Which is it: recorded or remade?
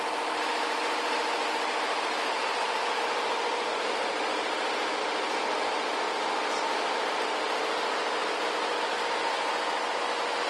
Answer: recorded